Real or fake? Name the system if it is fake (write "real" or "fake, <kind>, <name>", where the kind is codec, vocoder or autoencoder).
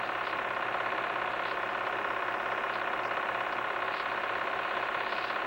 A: real